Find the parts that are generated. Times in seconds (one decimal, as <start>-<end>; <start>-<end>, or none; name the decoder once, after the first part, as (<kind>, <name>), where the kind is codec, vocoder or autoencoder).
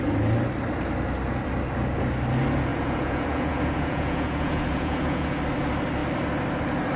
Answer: 2.7-5.4 (vocoder, Vocos)